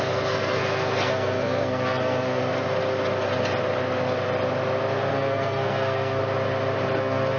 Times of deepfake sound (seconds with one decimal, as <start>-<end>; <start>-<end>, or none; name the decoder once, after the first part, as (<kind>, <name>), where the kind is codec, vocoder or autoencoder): 0.0-2.4 (codec, SNAC); 5.1-6.2; 7.0-7.4